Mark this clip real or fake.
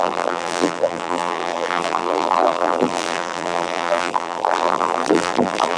fake